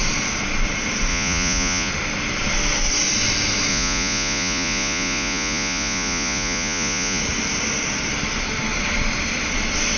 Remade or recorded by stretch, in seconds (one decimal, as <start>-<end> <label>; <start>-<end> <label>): 0.0-1.1 recorded; 1.1-1.9 remade; 1.9-3.7 recorded; 3.7-7.2 remade; 7.2-10.0 recorded